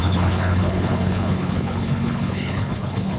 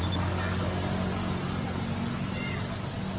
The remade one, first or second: first